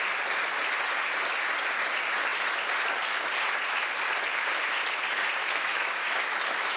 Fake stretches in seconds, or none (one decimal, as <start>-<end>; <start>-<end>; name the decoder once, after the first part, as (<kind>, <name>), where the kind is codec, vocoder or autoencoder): 5.4-6.8 (autoencoder, DAC-VAE)